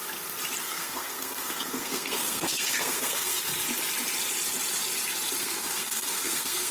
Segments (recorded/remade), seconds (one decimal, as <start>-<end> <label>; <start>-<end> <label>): 0.0-0.6 recorded; 0.6-3.5 remade; 3.5-5.4 recorded; 5.4-6.7 remade